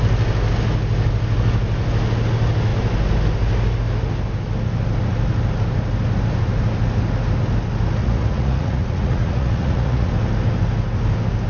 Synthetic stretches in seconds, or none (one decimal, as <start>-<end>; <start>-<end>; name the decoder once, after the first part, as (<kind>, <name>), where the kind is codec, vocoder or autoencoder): 8.0-10.1 (vocoder, Vocos)